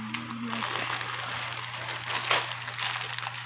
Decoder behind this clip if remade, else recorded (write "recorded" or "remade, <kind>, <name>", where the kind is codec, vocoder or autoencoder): recorded